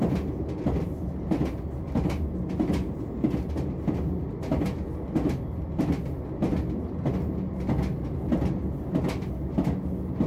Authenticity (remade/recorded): recorded